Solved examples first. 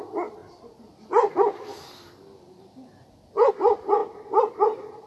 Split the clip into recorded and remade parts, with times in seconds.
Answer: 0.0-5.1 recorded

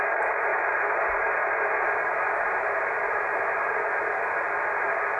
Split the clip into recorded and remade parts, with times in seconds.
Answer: 0.0-5.2 recorded

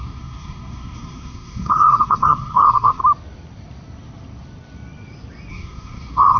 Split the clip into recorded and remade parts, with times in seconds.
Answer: 0.0-3.0 remade; 3.0-5.5 recorded; 5.5-6.4 remade

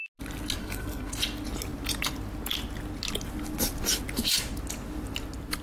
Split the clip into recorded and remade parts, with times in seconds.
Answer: 0.0-0.6 recorded; 0.6-1.1 remade; 1.1-5.6 recorded

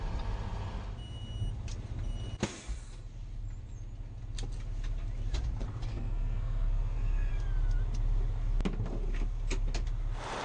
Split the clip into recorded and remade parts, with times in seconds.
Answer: 0.0-5.9 recorded; 5.9-7.3 remade; 7.3-10.4 recorded

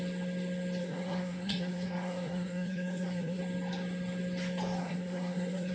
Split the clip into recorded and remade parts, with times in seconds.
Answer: 0.0-0.8 recorded; 0.8-3.4 remade; 3.4-4.8 recorded; 4.8-5.7 remade

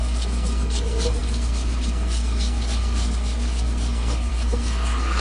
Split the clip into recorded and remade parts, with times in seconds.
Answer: 0.0-5.2 remade

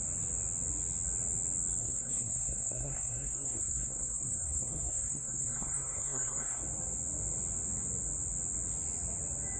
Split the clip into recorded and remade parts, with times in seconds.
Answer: 0.0-1.8 recorded; 1.8-6.6 remade; 6.6-9.6 recorded